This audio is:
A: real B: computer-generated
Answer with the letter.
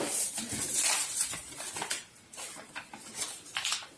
A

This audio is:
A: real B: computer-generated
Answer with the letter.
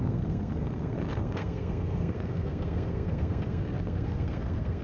B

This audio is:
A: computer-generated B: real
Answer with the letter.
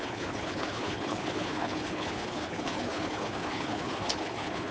A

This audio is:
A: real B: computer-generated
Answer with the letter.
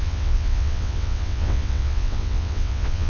B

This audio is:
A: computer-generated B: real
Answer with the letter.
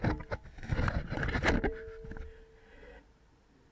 B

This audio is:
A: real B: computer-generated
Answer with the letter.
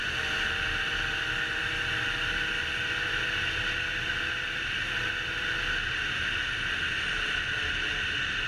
A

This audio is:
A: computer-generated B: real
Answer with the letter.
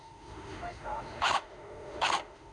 A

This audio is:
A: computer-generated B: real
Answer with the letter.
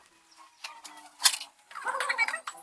B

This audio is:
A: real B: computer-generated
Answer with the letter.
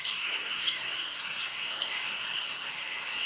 B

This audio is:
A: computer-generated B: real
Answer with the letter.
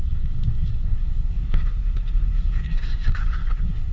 A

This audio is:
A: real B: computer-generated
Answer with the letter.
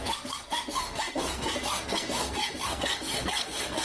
B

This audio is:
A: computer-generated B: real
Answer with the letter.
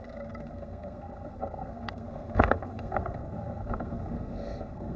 A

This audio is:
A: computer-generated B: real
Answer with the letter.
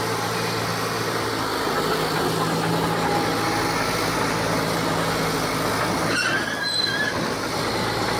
B